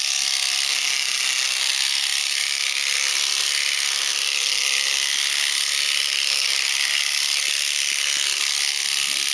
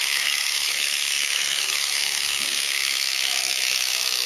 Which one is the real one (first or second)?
first